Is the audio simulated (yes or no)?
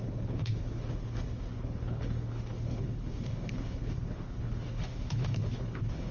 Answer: yes